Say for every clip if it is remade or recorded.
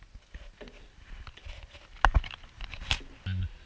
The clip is recorded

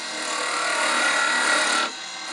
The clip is recorded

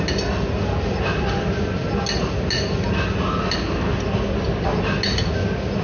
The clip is recorded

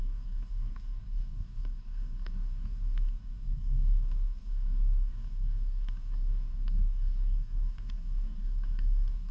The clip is remade